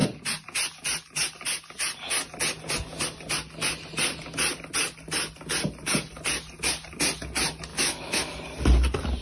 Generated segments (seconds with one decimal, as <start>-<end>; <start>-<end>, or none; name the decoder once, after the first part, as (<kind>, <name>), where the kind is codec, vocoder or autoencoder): 7.7-8.4 (autoencoder, DAC-VAE)